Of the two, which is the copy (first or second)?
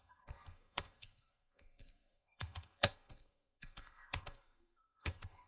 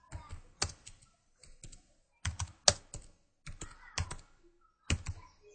first